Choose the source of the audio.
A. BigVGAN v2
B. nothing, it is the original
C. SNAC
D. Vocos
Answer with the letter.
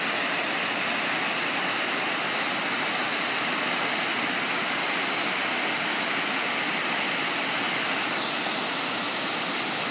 B